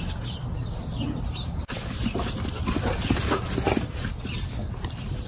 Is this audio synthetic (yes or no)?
no